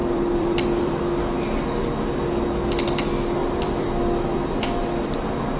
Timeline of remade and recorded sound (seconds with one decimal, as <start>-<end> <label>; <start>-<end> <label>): 0.0-1.0 remade; 1.0-3.4 recorded; 3.4-4.0 remade; 4.0-5.6 recorded